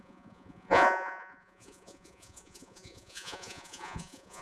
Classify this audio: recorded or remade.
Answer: remade